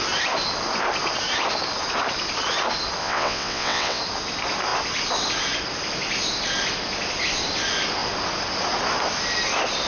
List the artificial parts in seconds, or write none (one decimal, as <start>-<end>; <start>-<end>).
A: 3.0-4.0